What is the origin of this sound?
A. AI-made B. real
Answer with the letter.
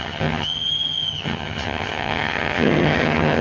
A